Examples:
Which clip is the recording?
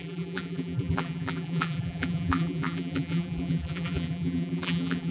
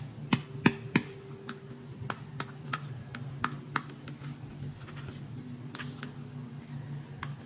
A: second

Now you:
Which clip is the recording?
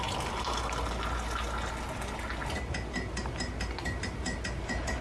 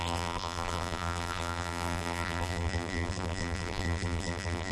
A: first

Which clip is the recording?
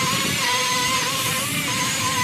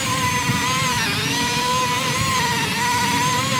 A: second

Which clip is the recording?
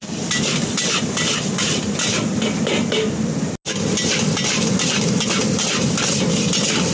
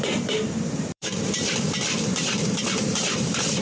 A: first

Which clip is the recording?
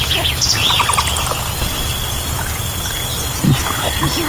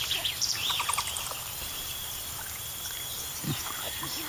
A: first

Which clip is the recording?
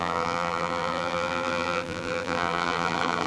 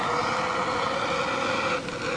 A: second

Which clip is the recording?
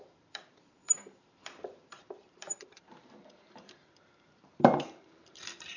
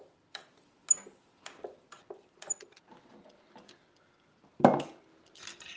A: second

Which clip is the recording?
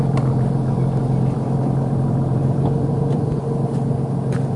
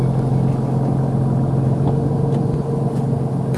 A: second